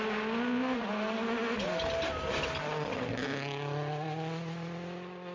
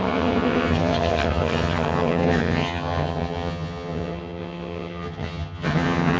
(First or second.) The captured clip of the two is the first